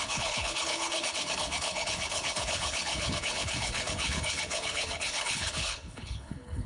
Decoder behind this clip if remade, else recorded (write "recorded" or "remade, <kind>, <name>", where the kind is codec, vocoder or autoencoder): remade, codec, HILCodec